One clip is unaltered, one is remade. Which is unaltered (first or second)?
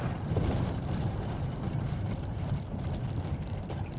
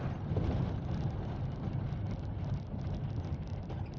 second